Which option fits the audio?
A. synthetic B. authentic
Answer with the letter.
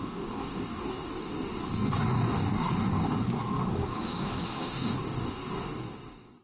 A